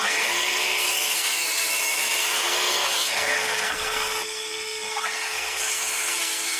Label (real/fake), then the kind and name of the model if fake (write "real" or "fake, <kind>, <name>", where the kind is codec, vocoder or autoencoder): fake, codec, SNAC